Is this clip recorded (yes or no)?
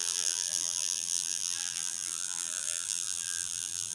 no